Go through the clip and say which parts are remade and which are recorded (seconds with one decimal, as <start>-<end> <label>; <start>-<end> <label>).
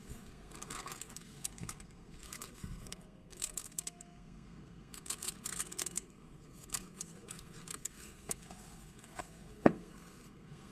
0.0-10.7 remade